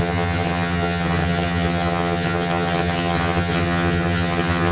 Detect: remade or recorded remade